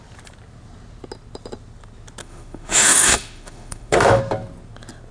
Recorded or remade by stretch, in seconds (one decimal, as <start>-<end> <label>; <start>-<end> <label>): 0.0-2.2 recorded; 2.2-4.2 remade; 4.2-5.1 recorded